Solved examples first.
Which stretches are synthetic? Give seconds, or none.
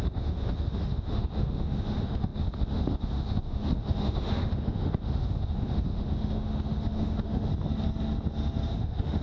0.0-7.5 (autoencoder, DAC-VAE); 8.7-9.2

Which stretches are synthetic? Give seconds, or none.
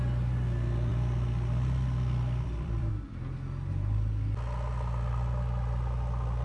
0.9-2.9 (vocoder, BigVGAN v2)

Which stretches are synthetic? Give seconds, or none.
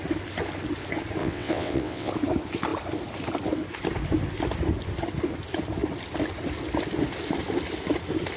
1.2-2.1 (vocoder, WaveNeXt)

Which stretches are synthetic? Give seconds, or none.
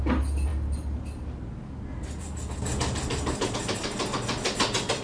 none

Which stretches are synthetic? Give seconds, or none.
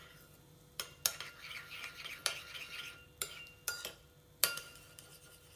none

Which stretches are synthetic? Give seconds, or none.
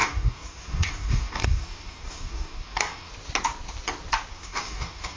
0.0-3.1 (codec, DAC); 4.3-5.2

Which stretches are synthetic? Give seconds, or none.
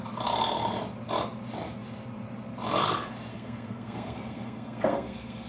3.3-5.5 (codec, SNAC)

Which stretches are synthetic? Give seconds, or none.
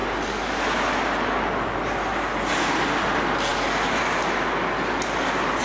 none